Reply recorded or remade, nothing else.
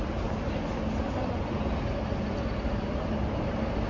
recorded